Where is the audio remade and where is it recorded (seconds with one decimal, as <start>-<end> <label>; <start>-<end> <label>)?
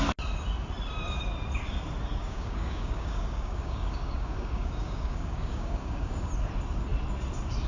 0.0-2.2 recorded; 2.2-6.3 remade; 6.3-7.7 recorded